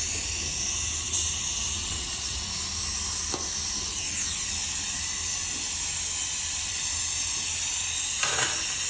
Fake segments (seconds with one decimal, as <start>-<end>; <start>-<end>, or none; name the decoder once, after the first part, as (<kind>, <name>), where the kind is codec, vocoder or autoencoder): 1.8-2.5 (vocoder, WaveNeXt)